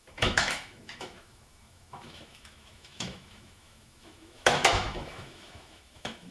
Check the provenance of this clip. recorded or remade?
remade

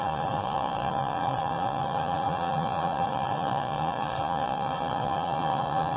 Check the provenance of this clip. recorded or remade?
remade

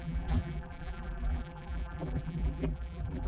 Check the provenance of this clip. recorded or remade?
remade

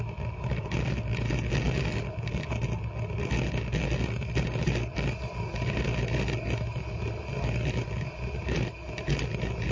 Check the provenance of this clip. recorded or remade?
recorded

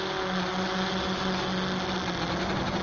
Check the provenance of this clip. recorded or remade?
recorded